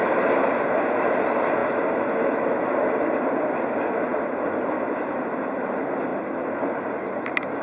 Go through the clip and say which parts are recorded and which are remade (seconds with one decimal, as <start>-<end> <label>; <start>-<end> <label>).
0.0-7.6 recorded